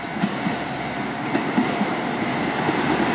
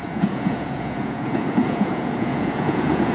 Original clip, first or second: first